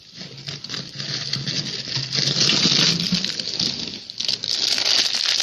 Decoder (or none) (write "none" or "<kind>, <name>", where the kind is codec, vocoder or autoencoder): none